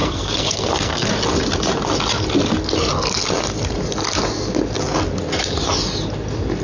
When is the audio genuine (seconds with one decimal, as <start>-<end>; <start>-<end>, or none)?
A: 1.1-6.6

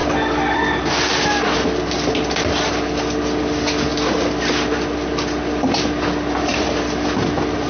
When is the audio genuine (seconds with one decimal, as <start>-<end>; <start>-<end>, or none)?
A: 0.0-7.7

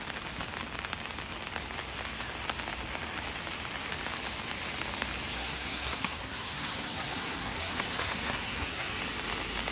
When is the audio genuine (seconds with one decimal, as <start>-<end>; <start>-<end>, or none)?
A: 0.0-5.3; 8.9-9.7

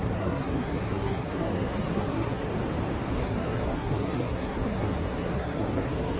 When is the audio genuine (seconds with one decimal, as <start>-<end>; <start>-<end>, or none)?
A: 2.5-3.1

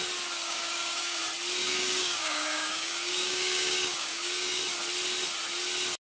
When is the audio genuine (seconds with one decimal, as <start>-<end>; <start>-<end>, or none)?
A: 0.0-0.4; 1.2-1.6; 4.6-6.1